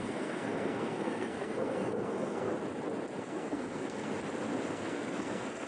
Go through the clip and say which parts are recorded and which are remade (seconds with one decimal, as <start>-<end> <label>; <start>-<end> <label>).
0.0-2.5 remade; 2.5-3.2 recorded; 3.2-4.1 remade; 4.1-4.6 recorded; 4.6-5.7 remade